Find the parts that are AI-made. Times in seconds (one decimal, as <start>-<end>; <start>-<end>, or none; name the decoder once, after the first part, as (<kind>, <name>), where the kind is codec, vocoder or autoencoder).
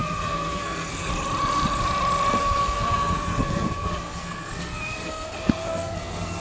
0.0-1.1 (codec, SNAC); 2.4-6.4